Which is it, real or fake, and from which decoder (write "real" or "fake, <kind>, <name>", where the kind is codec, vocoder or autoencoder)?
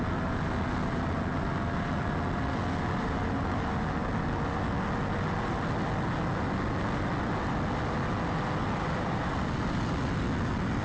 real